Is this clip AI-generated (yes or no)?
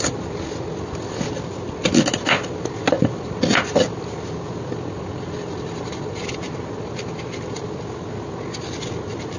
no